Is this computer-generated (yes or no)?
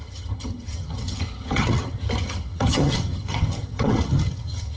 yes